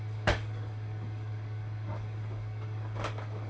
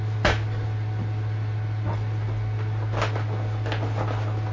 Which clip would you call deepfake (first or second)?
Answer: first